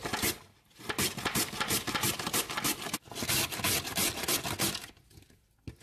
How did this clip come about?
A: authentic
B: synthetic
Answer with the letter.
A